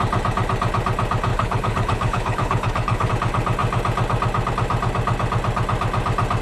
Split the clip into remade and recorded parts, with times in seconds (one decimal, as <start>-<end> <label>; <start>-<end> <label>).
0.0-1.3 recorded; 1.3-3.1 remade; 3.1-6.4 recorded